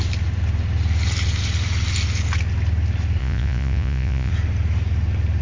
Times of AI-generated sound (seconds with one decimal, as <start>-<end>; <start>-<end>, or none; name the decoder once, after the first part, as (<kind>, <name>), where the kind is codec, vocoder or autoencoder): 3.2-4.3 (vocoder, Vocos)